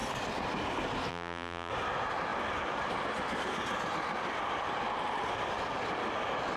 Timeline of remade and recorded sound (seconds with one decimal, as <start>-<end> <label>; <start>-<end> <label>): 0.0-1.1 recorded; 1.1-1.7 remade; 1.7-6.6 recorded